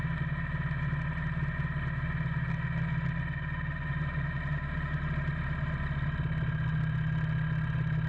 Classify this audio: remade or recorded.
recorded